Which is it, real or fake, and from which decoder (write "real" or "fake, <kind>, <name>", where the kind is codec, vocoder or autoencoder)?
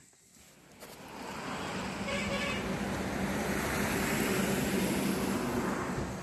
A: real